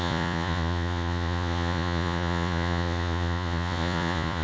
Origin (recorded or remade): remade